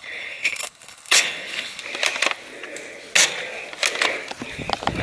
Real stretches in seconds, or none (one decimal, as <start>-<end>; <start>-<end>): 1.8-5.0